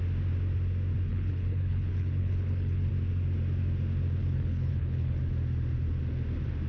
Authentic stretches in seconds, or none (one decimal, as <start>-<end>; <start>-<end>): 0.0-1.1; 2.9-4.2; 5.2-6.7